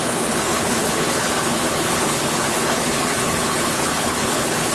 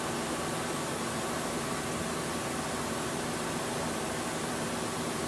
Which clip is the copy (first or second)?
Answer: first